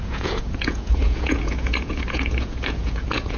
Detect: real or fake fake